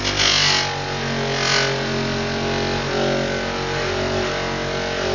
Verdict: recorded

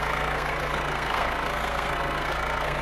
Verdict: remade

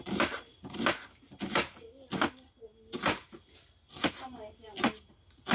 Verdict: recorded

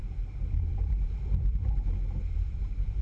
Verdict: remade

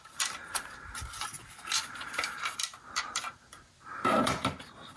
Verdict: remade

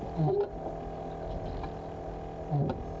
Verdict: recorded